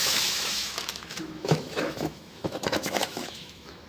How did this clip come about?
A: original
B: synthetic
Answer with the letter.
B